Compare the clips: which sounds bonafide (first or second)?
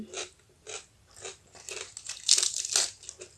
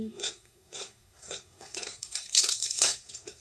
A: first